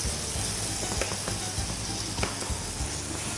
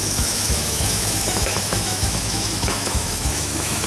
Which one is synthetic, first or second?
second